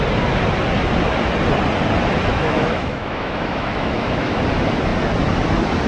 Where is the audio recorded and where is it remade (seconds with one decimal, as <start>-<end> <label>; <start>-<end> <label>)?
0.0-2.3 recorded; 2.3-4.4 remade; 4.4-5.9 recorded